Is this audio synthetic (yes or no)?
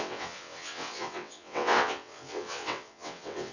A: yes